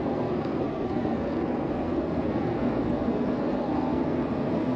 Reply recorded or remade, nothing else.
remade